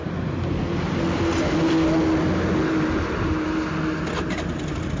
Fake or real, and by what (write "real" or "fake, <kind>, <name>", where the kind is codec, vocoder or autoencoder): real